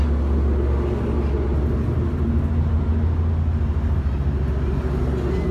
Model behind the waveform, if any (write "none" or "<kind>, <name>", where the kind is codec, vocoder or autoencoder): none